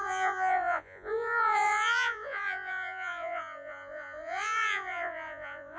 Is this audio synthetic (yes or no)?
yes